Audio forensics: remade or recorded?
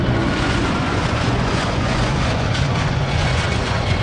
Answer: remade